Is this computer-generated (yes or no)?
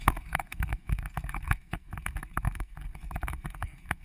yes